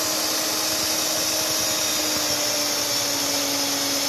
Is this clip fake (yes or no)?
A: no